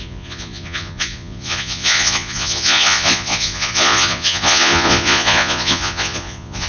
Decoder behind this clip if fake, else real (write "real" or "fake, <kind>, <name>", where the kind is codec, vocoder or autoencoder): fake, vocoder, Vocos